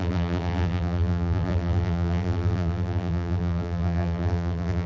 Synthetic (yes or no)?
yes